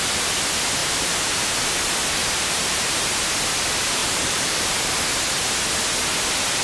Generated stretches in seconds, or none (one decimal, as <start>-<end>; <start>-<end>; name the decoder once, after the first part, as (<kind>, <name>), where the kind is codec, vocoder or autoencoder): 0.8-1.4 (vocoder, BigVGAN v2); 2.2-3.1; 4.0-4.9

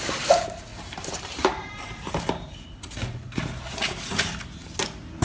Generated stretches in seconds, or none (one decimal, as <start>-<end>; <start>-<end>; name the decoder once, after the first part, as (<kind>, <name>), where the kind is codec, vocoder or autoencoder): 0.7-3.4 (vocoder, BigVGAN v2)

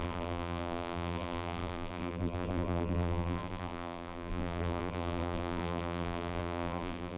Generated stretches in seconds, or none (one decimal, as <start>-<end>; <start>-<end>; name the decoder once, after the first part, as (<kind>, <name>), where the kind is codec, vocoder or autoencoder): 0.0-7.2 (vocoder, BigVGAN v2)

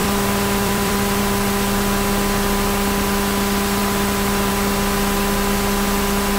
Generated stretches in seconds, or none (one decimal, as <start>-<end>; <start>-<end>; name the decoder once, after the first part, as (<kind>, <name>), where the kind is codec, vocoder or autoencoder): 0.0-1.2 (vocoder, BigVGAN v2); 3.8-4.5

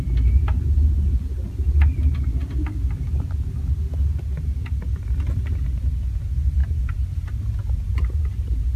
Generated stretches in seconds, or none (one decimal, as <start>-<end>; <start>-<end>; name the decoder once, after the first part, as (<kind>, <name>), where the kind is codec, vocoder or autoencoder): 6.6-8.8 (vocoder, BigVGAN v2)